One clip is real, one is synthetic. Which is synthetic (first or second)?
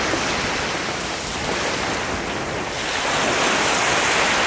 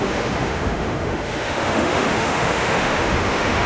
second